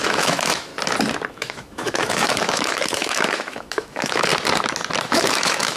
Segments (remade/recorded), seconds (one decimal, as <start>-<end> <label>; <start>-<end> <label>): 0.0-0.7 remade; 0.7-1.3 recorded; 1.3-4.3 remade; 4.3-5.0 recorded; 5.0-5.8 remade